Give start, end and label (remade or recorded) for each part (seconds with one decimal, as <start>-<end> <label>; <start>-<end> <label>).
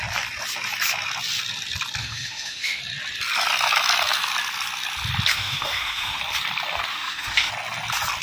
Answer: 0.0-2.0 recorded; 2.0-2.8 remade; 2.8-5.3 recorded; 5.3-6.2 remade; 6.2-6.9 recorded; 6.9-7.5 remade; 7.5-8.2 recorded